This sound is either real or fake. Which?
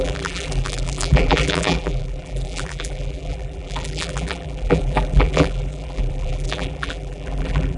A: fake